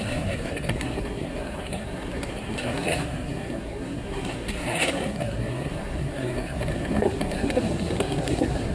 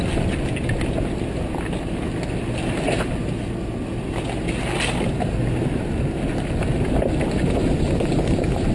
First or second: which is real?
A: second